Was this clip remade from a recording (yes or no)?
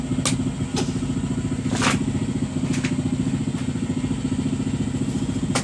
no